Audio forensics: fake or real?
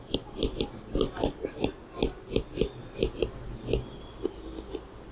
real